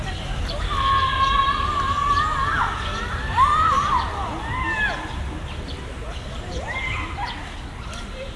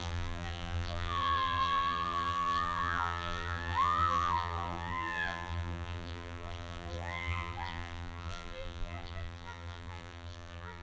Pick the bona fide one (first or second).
first